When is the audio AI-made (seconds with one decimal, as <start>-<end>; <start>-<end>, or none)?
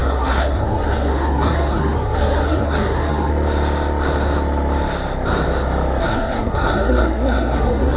0.0-3.3; 6.0-8.0